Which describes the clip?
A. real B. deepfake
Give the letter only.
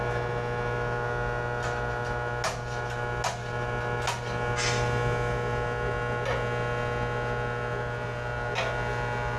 A